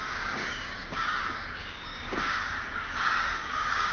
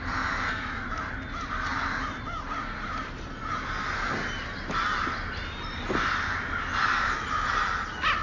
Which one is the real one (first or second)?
second